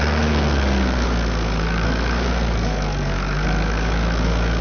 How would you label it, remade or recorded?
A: remade